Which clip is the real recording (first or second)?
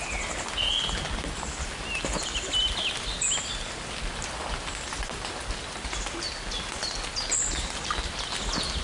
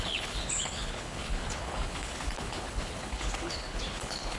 first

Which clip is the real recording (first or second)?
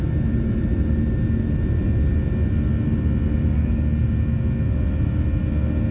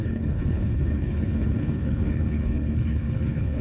first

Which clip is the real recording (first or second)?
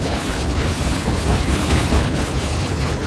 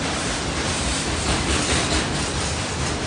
second